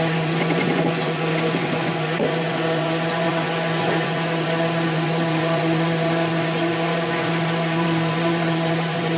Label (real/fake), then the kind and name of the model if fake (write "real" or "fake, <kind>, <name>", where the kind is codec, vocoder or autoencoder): fake, vocoder, Vocos